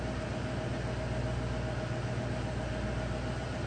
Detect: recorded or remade recorded